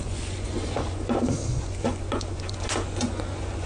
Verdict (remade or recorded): remade